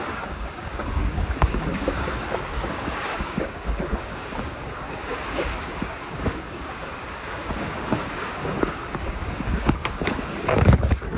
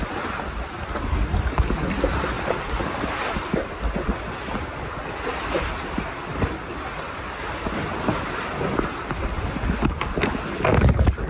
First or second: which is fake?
first